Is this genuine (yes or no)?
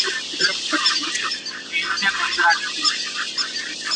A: yes